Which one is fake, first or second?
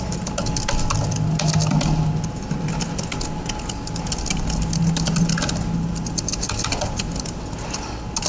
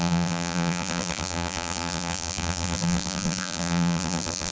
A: second